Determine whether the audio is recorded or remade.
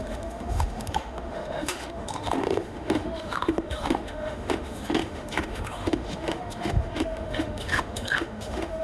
remade